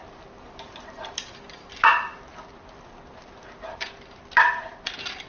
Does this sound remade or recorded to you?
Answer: recorded